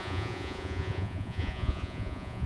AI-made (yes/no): yes